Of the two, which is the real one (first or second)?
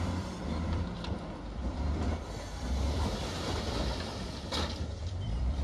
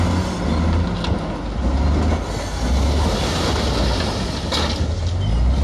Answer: second